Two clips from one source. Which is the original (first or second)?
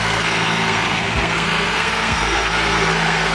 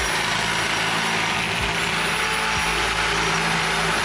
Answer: second